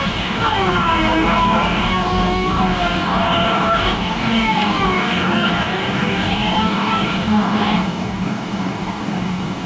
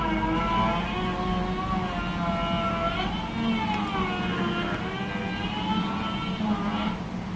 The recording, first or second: second